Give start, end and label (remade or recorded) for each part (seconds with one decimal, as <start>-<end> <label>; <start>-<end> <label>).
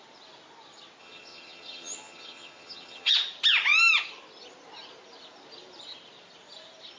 0.0-1.0 recorded; 1.0-3.1 remade; 3.1-7.0 recorded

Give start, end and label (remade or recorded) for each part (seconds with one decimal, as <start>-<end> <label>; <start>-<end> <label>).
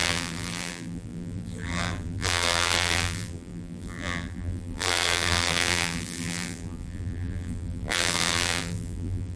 0.0-9.4 remade